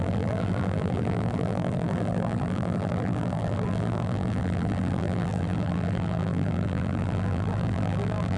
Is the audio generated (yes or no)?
yes